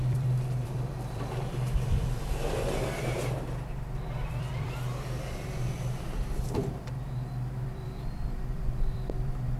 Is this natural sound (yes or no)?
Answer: no